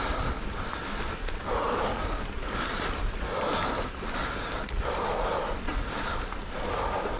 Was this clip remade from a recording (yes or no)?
no